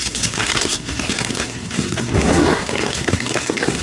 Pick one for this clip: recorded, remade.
remade